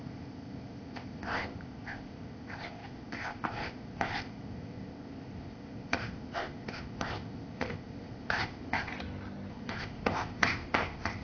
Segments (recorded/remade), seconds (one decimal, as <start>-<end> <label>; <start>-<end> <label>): 0.0-8.9 remade; 8.9-9.5 recorded; 9.5-11.2 remade